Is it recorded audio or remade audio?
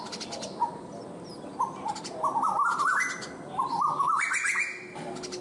recorded